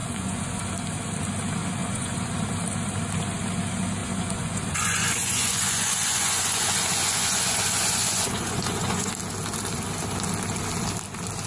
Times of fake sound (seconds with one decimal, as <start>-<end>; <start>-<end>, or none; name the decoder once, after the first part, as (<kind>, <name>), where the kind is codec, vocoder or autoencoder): 0.0-0.6 (vocoder, Vocos); 1.8-2.3; 4.0-9.1